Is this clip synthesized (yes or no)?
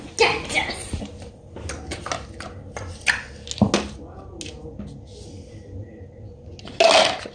no